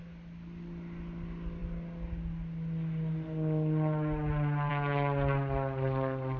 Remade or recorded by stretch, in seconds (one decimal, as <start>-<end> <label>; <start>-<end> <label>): 0.0-6.4 recorded